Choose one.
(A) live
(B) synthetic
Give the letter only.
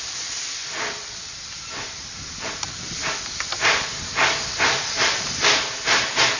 A